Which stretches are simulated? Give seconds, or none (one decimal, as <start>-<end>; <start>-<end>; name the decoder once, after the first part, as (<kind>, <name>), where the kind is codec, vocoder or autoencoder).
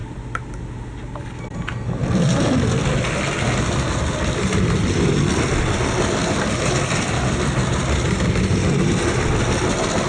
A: none